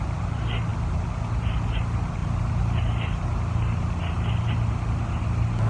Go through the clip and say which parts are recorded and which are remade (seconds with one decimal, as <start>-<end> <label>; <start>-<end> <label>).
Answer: 0.0-5.7 recorded